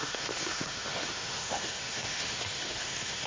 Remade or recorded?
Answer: remade